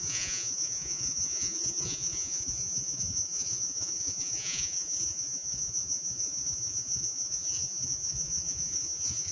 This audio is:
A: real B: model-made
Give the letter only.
B